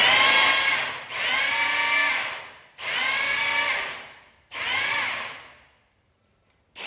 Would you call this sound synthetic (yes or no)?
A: no